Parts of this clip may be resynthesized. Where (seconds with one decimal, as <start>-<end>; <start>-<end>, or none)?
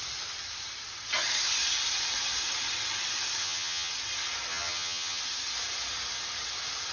3.4-3.9; 4.5-5.2